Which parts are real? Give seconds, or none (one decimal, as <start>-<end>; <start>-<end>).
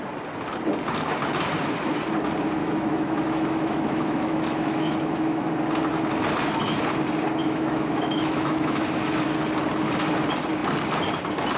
0.0-2.6; 5.5-7.4; 9.2-11.6